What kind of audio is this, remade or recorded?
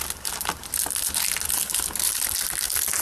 recorded